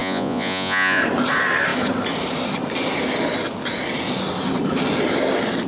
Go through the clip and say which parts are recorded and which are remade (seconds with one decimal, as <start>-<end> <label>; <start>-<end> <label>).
0.0-1.0 remade; 1.0-5.7 recorded